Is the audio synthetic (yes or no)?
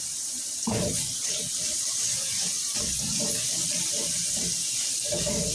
no